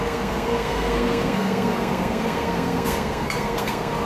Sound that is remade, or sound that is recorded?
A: remade